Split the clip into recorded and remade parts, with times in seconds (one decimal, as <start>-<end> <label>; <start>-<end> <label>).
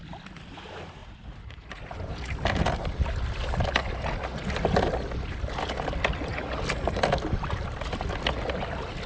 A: 0.0-1.0 recorded; 1.0-1.8 remade; 1.8-9.1 recorded